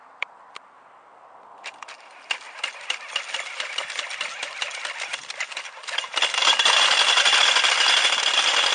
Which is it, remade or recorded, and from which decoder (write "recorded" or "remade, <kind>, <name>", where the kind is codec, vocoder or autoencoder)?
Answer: recorded